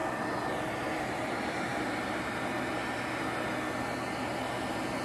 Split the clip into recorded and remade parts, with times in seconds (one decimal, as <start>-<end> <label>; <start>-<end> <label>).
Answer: 0.0-5.0 recorded